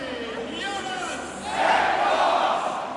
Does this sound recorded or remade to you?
recorded